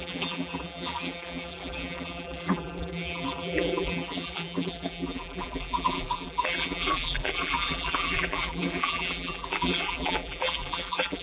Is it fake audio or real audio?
fake